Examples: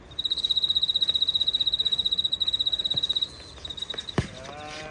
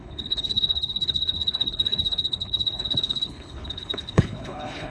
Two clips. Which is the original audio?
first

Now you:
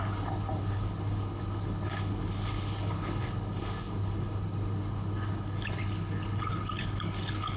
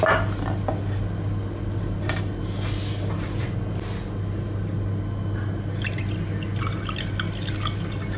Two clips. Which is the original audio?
second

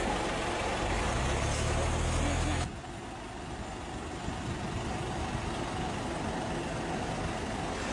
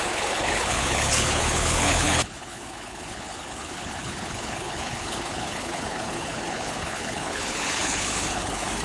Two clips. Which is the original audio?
first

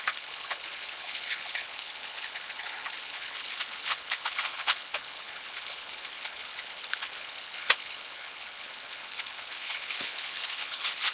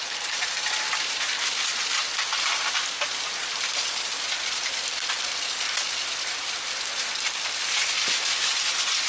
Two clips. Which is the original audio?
second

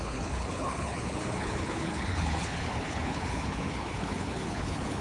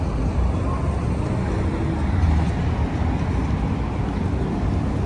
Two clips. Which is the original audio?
second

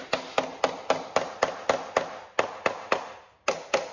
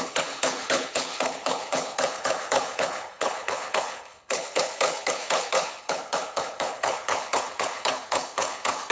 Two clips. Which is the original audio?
first